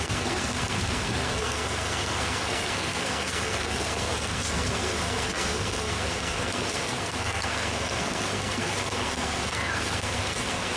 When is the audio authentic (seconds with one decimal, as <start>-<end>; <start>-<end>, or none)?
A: none